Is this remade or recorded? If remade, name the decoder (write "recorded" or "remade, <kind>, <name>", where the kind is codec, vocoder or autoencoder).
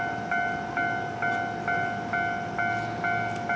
recorded